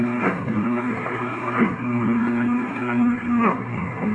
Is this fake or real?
fake